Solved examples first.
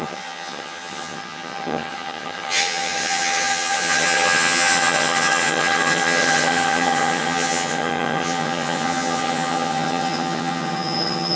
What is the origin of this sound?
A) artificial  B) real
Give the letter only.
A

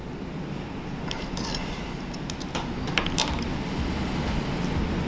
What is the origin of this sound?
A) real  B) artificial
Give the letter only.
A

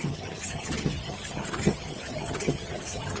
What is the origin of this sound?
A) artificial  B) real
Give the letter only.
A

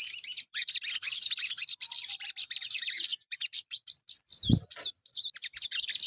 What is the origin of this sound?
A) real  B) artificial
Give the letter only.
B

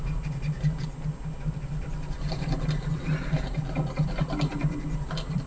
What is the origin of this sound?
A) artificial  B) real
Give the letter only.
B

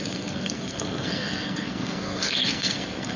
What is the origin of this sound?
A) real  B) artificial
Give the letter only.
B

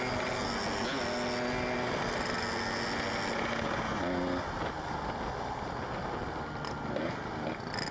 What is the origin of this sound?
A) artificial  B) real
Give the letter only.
B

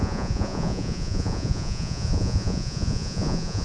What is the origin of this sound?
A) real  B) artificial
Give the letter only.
B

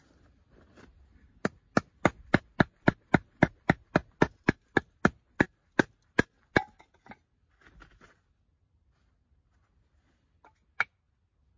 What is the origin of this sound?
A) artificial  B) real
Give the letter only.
B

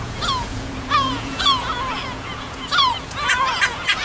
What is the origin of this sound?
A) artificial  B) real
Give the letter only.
A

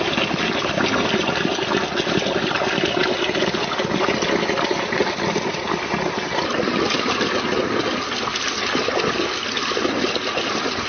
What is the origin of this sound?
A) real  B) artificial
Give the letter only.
A